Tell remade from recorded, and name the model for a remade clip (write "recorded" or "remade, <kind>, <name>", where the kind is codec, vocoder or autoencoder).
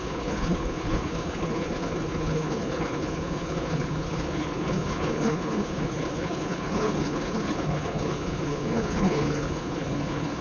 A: remade, codec, HILCodec